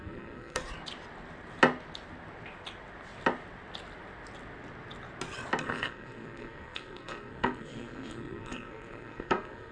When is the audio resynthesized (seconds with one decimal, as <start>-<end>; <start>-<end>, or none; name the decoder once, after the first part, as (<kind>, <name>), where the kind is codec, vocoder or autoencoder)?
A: 0.0-0.6 (codec, SNAC); 5.6-9.7